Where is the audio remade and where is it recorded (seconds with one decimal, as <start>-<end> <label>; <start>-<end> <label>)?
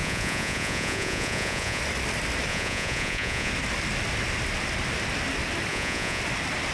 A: 0.0-1.8 remade; 1.8-2.5 recorded; 2.5-3.5 remade; 3.5-5.7 recorded; 5.7-6.2 remade; 6.2-6.7 recorded